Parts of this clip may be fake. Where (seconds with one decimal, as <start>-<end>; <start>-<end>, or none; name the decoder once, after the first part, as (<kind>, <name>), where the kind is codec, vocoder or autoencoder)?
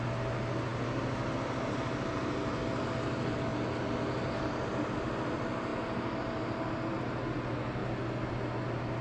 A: none